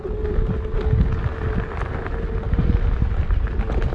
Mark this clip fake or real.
real